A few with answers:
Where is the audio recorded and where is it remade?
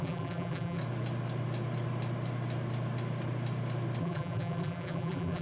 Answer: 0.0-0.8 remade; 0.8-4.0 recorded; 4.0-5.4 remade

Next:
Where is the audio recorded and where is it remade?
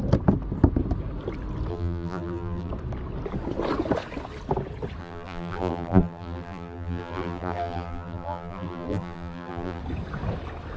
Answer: 0.0-1.7 recorded; 1.7-2.7 remade; 2.7-5.0 recorded; 5.0-9.8 remade; 9.8-10.8 recorded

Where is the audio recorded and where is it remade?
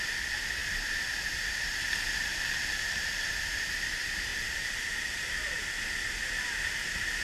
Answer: 0.0-2.3 recorded; 2.3-3.4 remade; 3.4-4.3 recorded; 4.3-5.7 remade; 5.7-7.2 recorded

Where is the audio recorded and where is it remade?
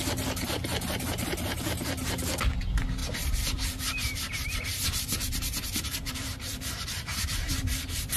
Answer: 0.0-3.0 recorded; 3.0-7.5 remade; 7.5-8.2 recorded